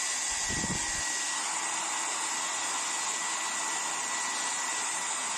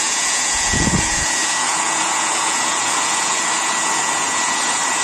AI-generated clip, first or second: second